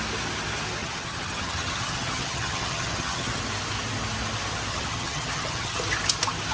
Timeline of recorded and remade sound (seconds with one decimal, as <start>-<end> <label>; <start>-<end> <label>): 0.0-0.8 recorded; 0.8-3.4 remade; 3.4-4.7 recorded; 4.7-5.8 remade; 5.8-6.5 recorded

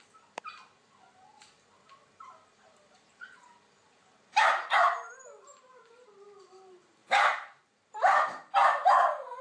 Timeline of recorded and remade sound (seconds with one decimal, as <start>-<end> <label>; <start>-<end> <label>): 0.0-2.0 recorded; 2.0-5.9 remade; 5.9-7.0 recorded; 7.0-9.4 remade